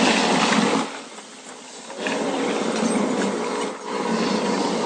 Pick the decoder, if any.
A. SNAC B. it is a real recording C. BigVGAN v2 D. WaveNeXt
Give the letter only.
B